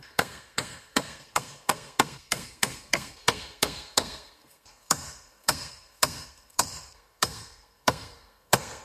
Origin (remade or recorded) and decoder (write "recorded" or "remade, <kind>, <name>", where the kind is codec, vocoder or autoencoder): remade, codec, SNAC